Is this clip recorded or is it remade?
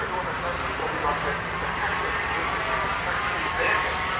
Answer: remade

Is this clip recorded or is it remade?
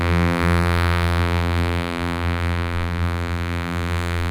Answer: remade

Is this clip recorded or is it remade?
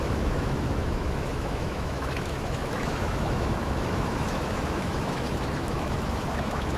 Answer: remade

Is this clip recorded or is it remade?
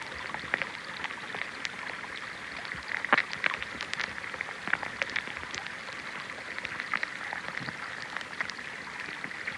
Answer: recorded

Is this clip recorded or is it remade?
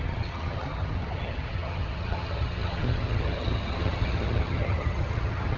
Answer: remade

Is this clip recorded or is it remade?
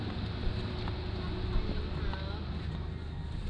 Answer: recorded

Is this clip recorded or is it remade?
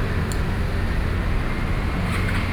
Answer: recorded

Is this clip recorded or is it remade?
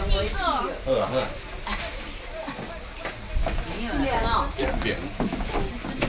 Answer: recorded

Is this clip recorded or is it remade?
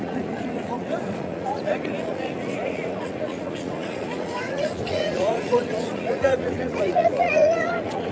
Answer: remade